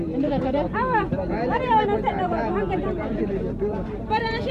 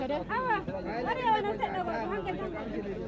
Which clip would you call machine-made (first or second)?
first